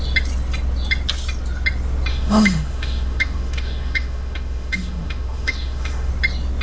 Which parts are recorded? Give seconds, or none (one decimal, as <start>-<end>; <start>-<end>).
0.0-2.1; 6.1-6.6